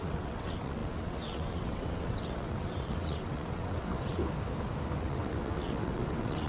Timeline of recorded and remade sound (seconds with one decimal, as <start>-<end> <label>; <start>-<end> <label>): 0.0-4.2 remade; 4.2-5.0 recorded; 5.0-6.5 remade